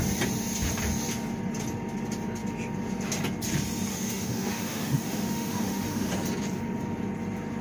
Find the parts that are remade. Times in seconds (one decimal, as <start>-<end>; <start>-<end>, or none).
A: 3.9-6.1

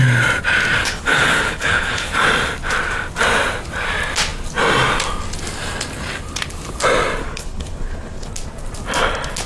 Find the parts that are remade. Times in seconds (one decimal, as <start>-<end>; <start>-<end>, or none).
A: 0.8-2.1; 7.2-8.3

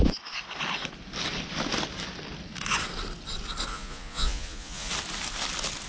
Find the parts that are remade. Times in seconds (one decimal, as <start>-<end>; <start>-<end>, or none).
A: 3.7-4.9

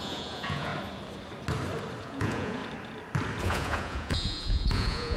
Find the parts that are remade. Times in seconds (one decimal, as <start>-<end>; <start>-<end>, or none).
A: 0.0-0.7; 2.0-2.6; 3.4-5.2